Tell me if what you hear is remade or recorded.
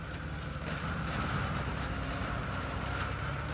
recorded